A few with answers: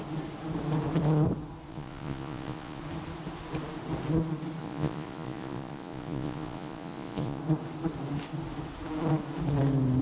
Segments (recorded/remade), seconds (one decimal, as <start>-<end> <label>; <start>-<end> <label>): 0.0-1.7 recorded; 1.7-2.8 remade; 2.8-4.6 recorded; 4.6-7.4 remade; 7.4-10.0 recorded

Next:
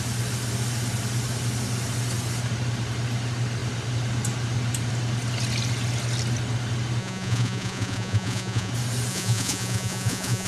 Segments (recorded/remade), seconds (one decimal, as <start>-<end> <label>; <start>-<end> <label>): 0.0-7.0 recorded; 7.0-8.7 remade; 8.7-9.1 recorded; 9.1-10.5 remade

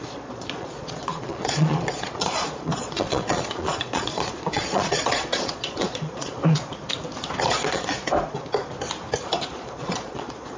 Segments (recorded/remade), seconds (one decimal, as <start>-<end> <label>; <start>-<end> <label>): 0.0-6.4 remade; 6.4-7.4 recorded; 7.4-8.0 remade; 8.0-9.5 recorded; 9.5-10.6 remade

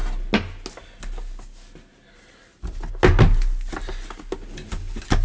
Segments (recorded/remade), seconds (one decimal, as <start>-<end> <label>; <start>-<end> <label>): 0.0-5.2 recorded

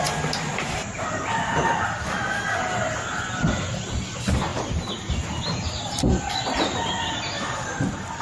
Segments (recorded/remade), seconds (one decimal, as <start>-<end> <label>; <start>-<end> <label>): 0.0-8.2 recorded

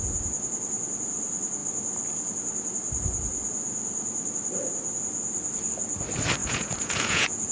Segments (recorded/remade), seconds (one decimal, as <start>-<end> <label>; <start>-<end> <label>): 0.0-6.4 recorded; 6.4-7.5 remade